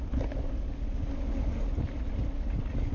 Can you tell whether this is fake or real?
real